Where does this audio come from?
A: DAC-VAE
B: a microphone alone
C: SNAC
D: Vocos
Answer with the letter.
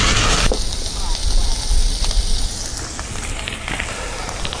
B